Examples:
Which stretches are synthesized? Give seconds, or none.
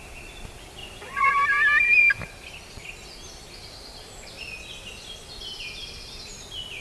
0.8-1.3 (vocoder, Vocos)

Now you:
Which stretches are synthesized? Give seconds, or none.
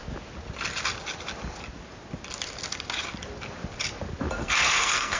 4.4-5.2 (codec, SNAC)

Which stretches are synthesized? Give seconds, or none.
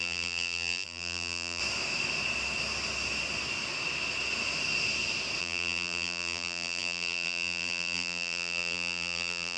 0.0-1.6 (vocoder, BigVGAN v2); 5.4-9.6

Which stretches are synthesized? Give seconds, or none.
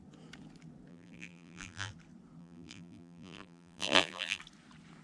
0.9-1.9 (vocoder, BigVGAN v2); 2.4-4.4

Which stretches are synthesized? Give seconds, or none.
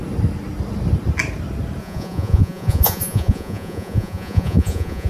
1.8-5.1 (vocoder, Vocos)